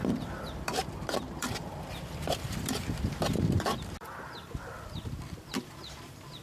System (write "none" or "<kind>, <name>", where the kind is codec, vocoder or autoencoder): vocoder, BigVGAN v2